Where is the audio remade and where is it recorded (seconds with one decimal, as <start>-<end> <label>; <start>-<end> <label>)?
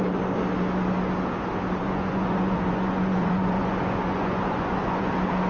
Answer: 0.0-1.8 recorded; 1.8-5.1 remade; 5.1-5.5 recorded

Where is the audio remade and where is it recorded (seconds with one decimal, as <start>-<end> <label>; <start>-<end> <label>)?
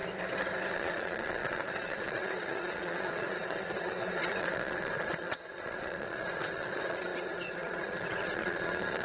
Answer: 0.0-0.7 recorded; 0.7-9.0 remade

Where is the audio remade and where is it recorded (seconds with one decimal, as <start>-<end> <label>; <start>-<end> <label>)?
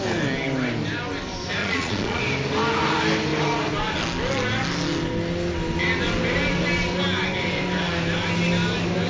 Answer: 0.0-1.6 recorded; 1.6-2.2 remade; 2.2-9.1 recorded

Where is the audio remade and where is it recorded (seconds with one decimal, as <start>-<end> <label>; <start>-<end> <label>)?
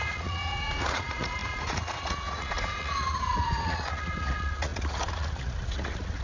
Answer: 0.0-6.2 remade